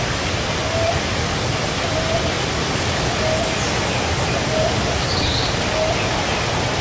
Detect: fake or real real